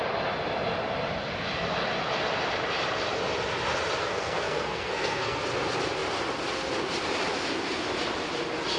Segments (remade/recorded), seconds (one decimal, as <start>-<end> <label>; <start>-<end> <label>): 0.0-4.0 recorded; 4.0-5.4 remade; 5.4-8.8 recorded